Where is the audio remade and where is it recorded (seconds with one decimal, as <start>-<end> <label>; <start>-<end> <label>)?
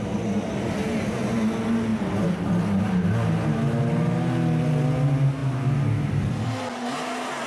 0.0-7.5 recorded